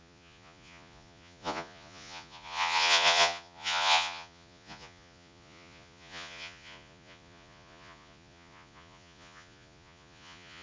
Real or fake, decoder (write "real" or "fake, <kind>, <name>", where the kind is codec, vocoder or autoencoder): fake, vocoder, Vocos